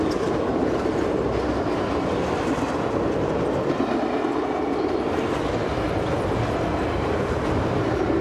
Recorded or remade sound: recorded